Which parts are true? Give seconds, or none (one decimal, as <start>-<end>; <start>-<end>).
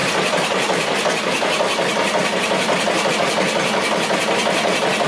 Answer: 0.0-5.1